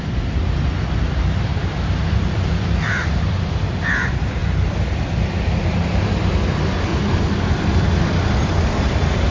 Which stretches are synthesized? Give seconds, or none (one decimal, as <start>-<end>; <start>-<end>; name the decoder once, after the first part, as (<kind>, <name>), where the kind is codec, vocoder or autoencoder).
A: 0.0-4.4 (vocoder, BigVGAN v2); 5.7-6.9; 8.8-9.3